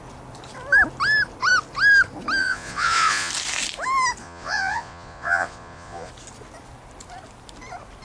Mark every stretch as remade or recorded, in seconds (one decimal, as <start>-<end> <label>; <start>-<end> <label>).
0.0-2.4 recorded; 2.4-3.3 remade; 3.3-4.2 recorded; 4.2-6.1 remade; 6.1-8.0 recorded

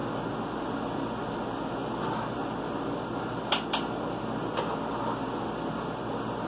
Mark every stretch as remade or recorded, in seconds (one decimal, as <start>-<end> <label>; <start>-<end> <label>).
0.0-6.5 recorded

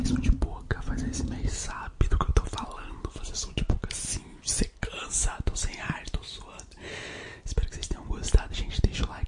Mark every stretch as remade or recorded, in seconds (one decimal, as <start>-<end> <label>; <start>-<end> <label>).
0.0-9.3 recorded

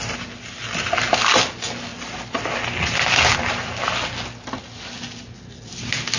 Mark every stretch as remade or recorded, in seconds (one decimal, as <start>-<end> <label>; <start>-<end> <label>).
0.0-6.2 recorded

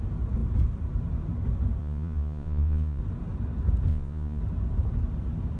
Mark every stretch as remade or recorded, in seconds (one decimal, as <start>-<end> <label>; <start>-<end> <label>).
0.0-1.8 recorded; 1.8-3.0 remade; 3.0-3.9 recorded; 3.9-4.4 remade; 4.4-5.6 recorded

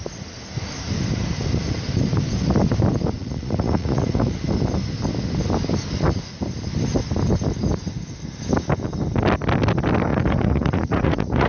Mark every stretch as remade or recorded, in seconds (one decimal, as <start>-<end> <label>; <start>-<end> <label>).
0.0-3.2 recorded; 3.2-4.4 remade; 4.4-10.1 recorded; 10.1-11.5 remade

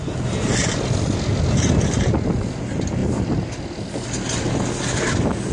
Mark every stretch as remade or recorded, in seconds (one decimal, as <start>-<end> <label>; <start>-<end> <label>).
0.0-5.5 recorded

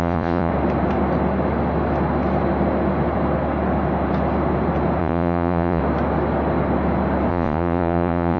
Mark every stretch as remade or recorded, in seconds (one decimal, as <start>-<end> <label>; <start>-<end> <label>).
0.0-0.5 remade; 0.5-5.0 recorded; 5.0-5.8 remade; 5.8-7.3 recorded; 7.3-8.4 remade